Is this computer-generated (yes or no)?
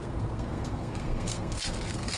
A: yes